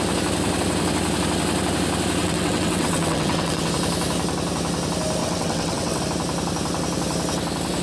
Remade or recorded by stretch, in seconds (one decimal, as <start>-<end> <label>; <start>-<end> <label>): 0.0-2.2 recorded; 2.2-3.7 remade; 3.7-5.2 recorded; 5.2-6.0 remade; 6.0-7.8 recorded